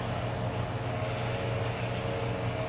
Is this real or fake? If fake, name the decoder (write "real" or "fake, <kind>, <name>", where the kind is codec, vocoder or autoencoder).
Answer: real